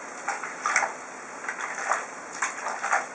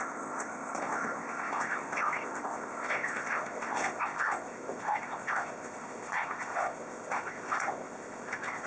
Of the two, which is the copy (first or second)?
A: second